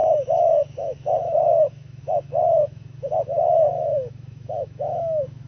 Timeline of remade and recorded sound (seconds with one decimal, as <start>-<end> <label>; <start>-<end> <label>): 0.0-5.5 remade